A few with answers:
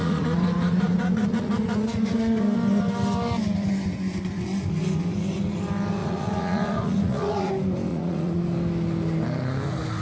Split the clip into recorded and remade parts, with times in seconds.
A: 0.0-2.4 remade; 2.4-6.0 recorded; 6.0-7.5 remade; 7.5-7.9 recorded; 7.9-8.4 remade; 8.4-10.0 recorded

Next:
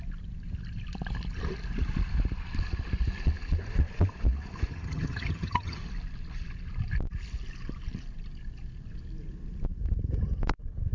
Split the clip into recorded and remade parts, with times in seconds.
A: 0.0-4.7 recorded; 4.7-5.8 remade; 5.8-10.9 recorded

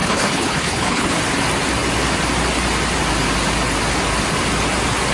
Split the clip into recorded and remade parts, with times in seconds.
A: 0.0-1.2 remade; 1.2-5.1 recorded

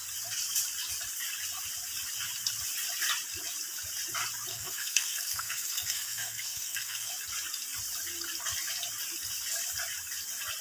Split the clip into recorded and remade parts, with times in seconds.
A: 0.0-4.5 recorded; 4.5-7.1 remade; 7.1-10.6 recorded

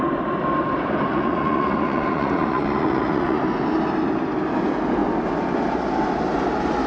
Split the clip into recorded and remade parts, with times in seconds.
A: 0.0-1.1 recorded; 1.1-3.4 remade; 3.4-6.9 recorded

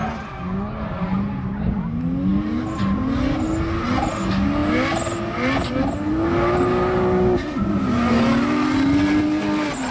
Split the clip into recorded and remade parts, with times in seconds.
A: 0.0-9.9 recorded

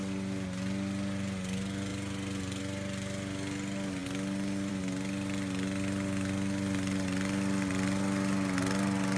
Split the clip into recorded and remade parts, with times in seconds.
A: 0.0-9.2 recorded

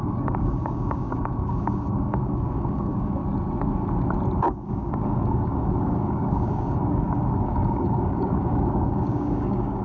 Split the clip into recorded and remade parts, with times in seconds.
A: 0.0-3.2 remade; 3.2-4.4 recorded; 4.4-9.8 remade